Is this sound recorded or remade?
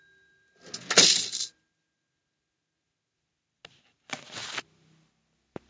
recorded